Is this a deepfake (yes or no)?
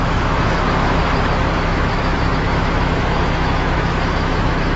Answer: yes